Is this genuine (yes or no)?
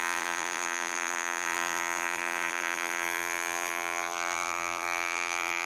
no